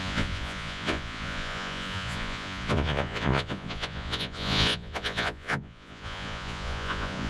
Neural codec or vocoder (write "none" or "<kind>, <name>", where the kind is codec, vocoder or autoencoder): vocoder, Vocos